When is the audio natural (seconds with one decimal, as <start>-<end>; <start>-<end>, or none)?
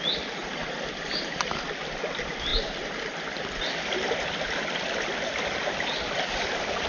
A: 0.0-0.4; 2.0-2.5